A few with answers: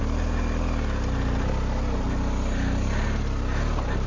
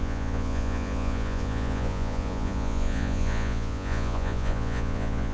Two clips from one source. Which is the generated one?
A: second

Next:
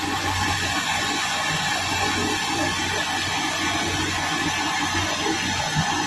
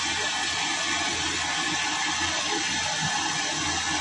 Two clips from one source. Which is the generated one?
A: first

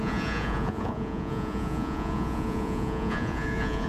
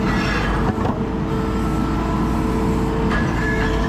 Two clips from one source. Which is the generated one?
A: first